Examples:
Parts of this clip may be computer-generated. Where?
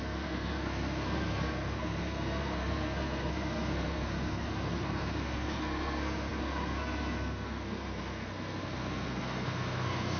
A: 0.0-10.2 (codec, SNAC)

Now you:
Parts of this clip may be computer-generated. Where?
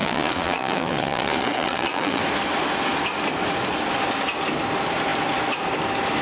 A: 0.0-2.2 (vocoder, Vocos)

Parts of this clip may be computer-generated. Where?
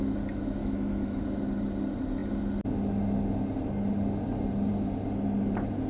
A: 0.6-1.2 (autoencoder, DAC-VAE)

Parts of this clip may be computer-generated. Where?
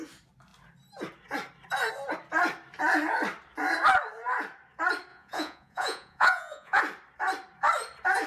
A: 5.1-6.8 (vocoder, Vocos)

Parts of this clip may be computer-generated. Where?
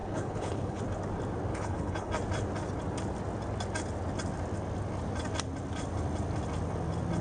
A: 0.0-0.8 (codec, HILCodec); 1.5-2.1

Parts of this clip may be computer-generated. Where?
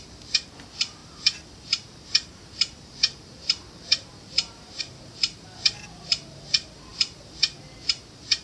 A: 0.0-8.4 (vocoder, BigVGAN v2)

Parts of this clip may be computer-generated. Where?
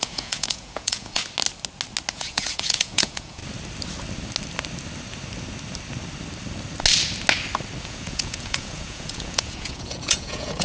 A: 0.0-1.2 (vocoder, Vocos); 2.1-3.4; 7.8-10.6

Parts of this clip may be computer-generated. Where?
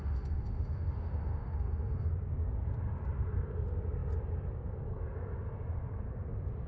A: 0.0-2.1 (autoencoder, DAC-VAE)